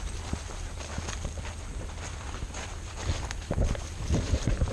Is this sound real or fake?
real